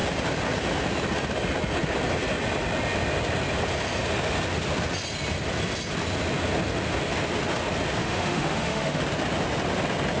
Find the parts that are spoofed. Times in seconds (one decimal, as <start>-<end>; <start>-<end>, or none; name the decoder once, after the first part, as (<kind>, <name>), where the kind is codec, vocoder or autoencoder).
8.0-9.0 (autoencoder, DAC-VAE)